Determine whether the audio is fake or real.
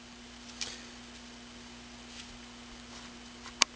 real